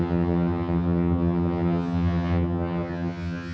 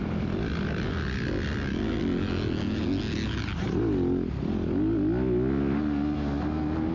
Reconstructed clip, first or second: first